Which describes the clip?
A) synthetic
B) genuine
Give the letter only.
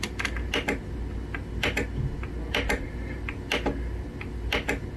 B